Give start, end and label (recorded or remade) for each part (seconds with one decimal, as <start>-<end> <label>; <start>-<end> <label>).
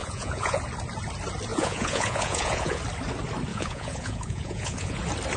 0.0-0.6 remade; 0.6-1.5 recorded; 1.5-2.8 remade; 2.8-3.5 recorded; 3.5-5.0 remade; 5.0-5.4 recorded